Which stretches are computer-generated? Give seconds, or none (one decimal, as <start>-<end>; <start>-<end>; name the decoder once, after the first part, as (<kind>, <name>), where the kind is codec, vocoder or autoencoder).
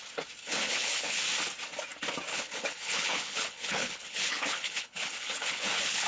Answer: 0.4-1.2 (codec, HILCodec); 2.3-6.1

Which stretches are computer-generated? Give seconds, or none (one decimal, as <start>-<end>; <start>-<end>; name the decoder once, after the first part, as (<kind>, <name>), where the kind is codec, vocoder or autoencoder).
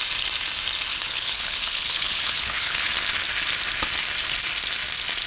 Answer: 0.9-2.9 (codec, HILCodec)